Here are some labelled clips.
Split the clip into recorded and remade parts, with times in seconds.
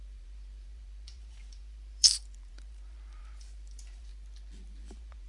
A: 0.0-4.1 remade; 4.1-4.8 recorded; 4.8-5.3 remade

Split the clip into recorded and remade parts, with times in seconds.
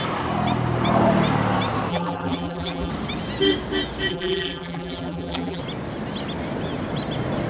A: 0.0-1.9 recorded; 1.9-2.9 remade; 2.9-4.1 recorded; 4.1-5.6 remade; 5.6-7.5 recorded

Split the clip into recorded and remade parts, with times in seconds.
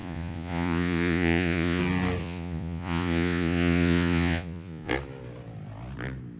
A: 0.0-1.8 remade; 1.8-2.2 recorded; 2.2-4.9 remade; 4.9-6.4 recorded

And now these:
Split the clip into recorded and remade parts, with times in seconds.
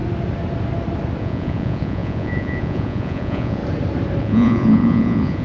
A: 0.0-1.2 recorded; 1.2-3.6 remade; 3.6-4.2 recorded; 4.2-5.4 remade